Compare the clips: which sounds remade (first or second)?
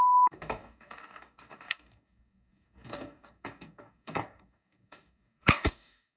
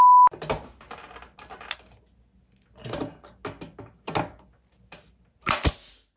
first